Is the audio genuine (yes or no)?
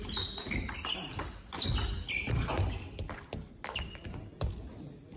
yes